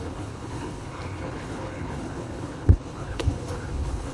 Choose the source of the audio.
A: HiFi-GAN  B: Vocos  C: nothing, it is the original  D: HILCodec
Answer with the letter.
D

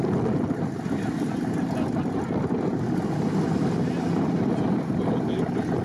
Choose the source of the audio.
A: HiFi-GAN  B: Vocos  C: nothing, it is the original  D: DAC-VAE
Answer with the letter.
C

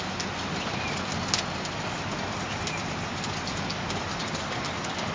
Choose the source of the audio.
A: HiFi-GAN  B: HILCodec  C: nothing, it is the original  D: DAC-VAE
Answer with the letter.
C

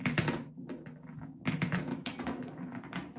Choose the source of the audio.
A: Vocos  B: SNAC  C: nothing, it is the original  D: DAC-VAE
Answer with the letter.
C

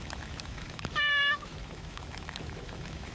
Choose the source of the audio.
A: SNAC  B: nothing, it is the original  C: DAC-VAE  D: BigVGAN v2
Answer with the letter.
C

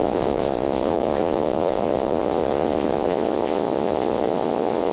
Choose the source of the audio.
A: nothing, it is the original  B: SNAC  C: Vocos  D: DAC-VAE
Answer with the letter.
C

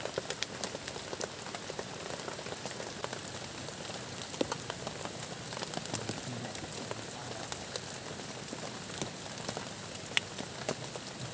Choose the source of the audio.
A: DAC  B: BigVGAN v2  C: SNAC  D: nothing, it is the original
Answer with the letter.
D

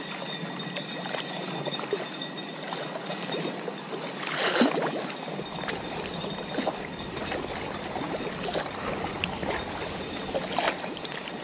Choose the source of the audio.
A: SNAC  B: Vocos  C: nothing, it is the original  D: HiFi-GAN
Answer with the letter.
C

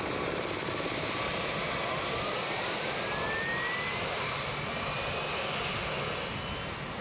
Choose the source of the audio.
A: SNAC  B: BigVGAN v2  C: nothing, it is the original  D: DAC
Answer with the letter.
C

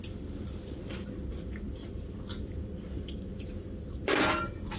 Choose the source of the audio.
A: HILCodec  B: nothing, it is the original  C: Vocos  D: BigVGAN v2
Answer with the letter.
B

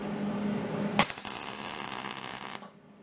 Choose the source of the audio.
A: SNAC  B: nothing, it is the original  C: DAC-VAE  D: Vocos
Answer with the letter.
B